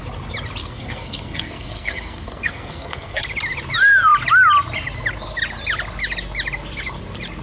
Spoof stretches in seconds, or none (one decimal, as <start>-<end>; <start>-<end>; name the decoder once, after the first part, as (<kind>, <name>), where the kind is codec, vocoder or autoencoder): 0.6-3.2 (codec, SNAC)